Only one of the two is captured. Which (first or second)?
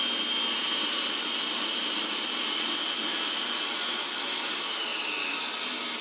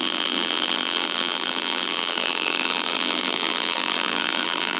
first